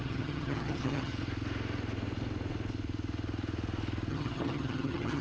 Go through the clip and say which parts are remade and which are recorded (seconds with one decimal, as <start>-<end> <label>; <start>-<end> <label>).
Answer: 0.0-1.1 remade; 1.1-4.1 recorded; 4.1-5.2 remade

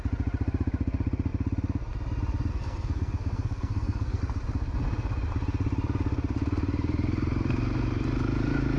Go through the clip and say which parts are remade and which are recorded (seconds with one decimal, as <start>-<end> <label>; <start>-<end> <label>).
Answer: 0.0-2.5 recorded; 2.5-4.2 remade; 4.2-8.8 recorded

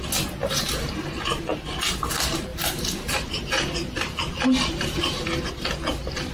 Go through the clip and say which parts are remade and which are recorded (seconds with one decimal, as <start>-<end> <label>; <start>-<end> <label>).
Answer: 0.0-0.4 recorded; 0.4-0.9 remade; 0.9-2.5 recorded; 2.5-5.5 remade; 5.5-6.3 recorded

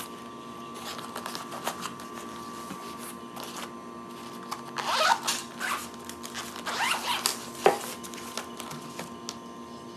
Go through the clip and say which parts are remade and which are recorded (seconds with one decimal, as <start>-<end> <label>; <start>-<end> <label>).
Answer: 0.0-10.0 recorded